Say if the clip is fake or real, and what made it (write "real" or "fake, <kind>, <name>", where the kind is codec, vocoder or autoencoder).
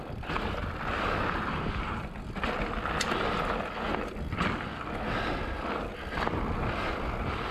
real